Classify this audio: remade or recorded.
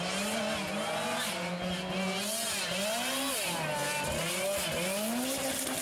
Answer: recorded